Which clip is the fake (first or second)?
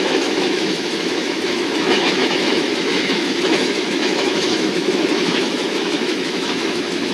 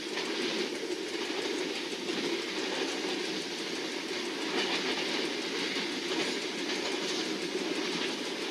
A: first